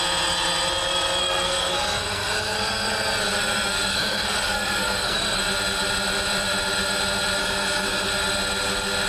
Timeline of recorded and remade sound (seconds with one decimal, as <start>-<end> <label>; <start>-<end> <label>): 0.0-1.2 recorded; 1.2-2.9 remade; 2.9-3.9 recorded; 3.9-5.4 remade; 5.4-7.4 recorded; 7.4-8.1 remade; 8.1-9.1 recorded